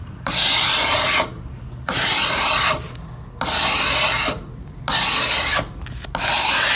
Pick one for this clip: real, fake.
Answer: real